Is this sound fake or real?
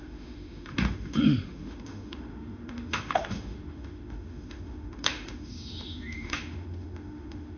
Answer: fake